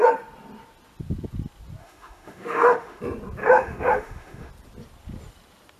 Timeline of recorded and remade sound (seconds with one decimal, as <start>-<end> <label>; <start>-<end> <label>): 0.0-1.8 recorded; 1.8-3.0 remade; 3.0-3.4 recorded; 3.4-4.5 remade; 4.5-5.8 recorded